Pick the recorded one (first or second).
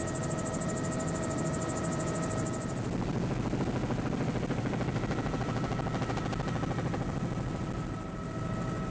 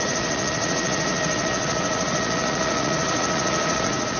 first